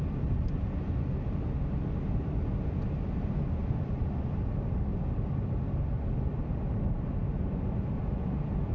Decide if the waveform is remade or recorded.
recorded